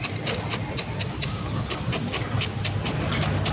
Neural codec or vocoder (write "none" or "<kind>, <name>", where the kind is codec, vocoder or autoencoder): none